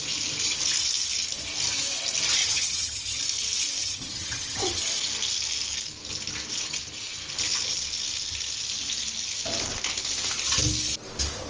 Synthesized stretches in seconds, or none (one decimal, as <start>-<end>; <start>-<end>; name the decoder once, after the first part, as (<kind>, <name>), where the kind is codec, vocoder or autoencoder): 2.4-3.2 (vocoder, HiFi-GAN); 3.8-4.8

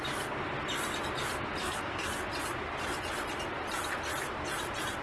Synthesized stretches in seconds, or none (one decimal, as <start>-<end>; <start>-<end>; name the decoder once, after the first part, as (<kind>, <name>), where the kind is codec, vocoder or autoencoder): 1.6-2.1 (codec, SNAC)

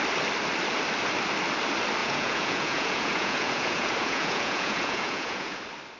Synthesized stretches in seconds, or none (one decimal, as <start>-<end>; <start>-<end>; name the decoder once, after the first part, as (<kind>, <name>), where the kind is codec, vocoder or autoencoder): 2.0-5.6 (vocoder, Vocos)

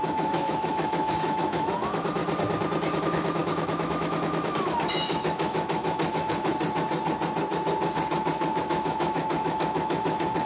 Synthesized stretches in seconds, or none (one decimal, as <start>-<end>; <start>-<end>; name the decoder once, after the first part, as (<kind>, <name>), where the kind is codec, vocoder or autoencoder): 0.0-2.2 (autoencoder, DAC-VAE); 3.0-6.5; 8.6-10.5

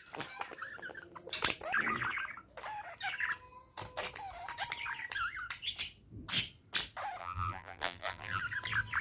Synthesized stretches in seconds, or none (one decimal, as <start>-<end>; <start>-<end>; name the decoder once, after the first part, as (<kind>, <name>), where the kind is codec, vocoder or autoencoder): 7.2-8.4 (vocoder, BigVGAN v2)

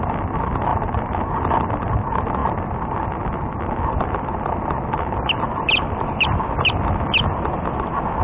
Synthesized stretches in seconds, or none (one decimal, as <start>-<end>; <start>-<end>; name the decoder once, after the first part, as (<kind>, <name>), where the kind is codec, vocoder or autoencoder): 0.7-1.4 (vocoder, BigVGAN v2)

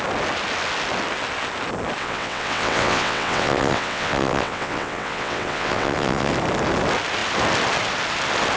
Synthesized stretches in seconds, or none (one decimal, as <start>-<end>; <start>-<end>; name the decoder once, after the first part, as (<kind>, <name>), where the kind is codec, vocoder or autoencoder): 2.0-6.3 (vocoder, WaveNeXt)